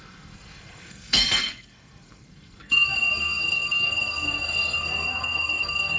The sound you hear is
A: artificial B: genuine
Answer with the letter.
A